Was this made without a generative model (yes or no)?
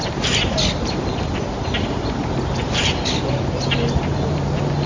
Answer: yes